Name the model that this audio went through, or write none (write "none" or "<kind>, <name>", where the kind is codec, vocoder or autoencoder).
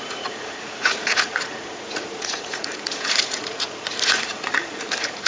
vocoder, Vocos